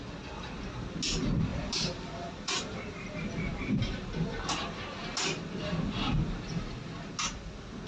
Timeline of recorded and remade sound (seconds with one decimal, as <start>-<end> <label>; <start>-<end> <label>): 0.0-1.5 recorded; 1.5-2.8 remade; 2.8-7.9 recorded